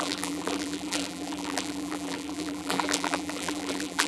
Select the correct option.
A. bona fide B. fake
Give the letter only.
B